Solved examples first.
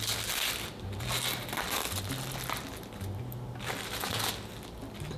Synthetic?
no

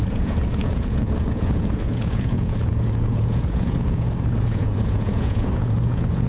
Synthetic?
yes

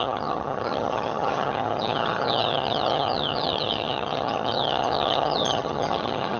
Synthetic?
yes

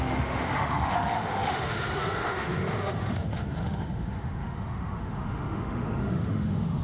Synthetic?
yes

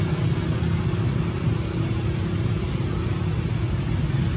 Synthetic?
no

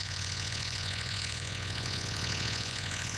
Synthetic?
yes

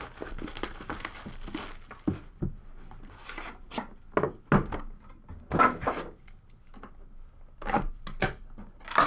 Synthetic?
no